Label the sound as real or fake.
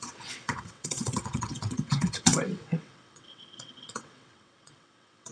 fake